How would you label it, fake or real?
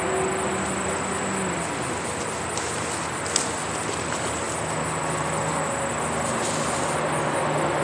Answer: real